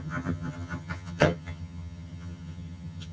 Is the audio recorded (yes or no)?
no